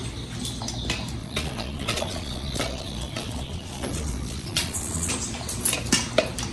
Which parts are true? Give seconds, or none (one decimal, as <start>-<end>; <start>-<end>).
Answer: 0.0-1.2; 5.1-6.5